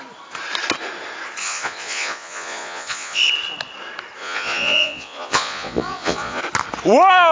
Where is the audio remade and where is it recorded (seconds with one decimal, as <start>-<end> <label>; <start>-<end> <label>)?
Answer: 0.0-1.4 recorded; 1.4-3.2 remade; 3.2-4.2 recorded; 4.2-6.4 remade; 6.4-7.3 recorded